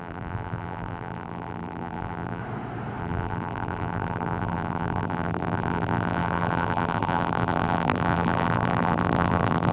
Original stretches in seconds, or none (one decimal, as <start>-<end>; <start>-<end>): 2.4-3.0